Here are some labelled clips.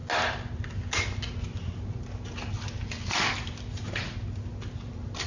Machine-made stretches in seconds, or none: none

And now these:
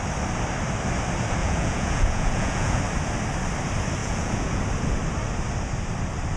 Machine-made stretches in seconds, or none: 1.4-2.8; 4.0-4.6

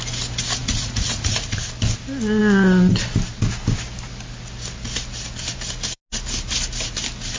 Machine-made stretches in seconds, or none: 0.6-1.7

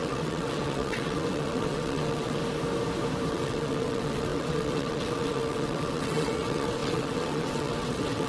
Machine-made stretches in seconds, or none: 0.0-2.4; 3.3-8.3

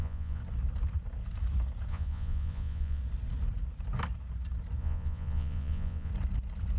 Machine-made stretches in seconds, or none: 0.0-0.4; 1.9-3.0; 4.8-6.1

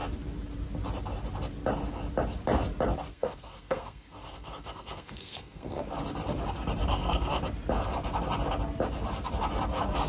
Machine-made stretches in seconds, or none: 3.1-5.8; 6.9-7.4